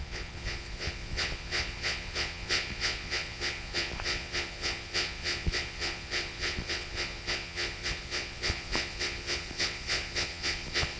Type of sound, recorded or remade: remade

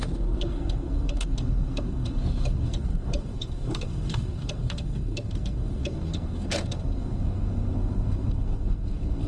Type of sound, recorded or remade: remade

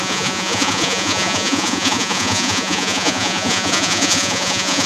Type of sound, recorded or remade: remade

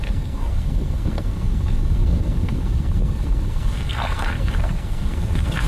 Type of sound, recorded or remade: remade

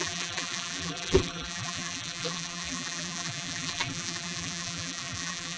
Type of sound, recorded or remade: remade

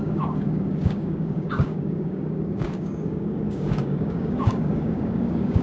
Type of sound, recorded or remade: remade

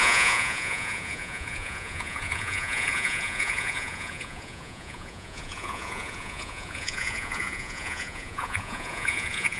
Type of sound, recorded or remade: remade